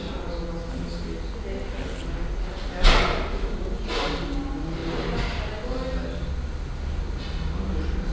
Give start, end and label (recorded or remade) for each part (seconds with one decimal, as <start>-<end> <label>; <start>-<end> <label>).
0.0-8.1 recorded